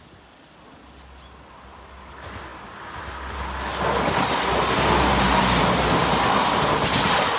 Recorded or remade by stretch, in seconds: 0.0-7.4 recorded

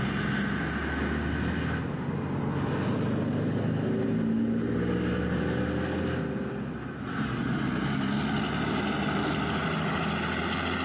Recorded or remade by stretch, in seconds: 0.0-10.8 recorded

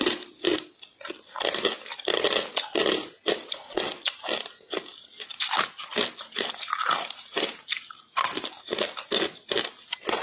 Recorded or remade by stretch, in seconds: 0.0-10.2 recorded